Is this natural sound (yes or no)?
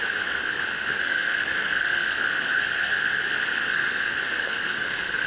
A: no